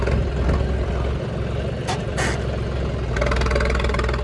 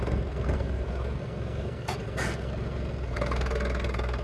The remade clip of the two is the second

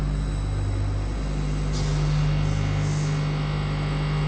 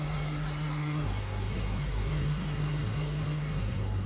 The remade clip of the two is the second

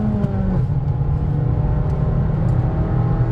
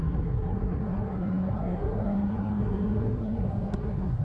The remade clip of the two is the second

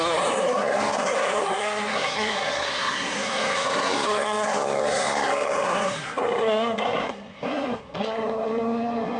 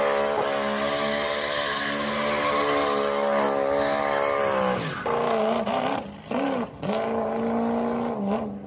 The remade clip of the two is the first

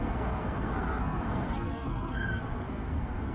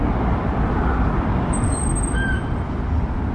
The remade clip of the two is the first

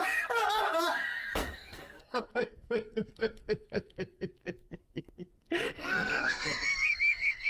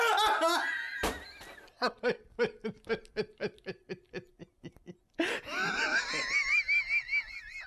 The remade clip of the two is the first